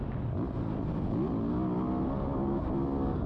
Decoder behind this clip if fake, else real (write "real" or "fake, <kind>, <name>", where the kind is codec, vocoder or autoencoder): real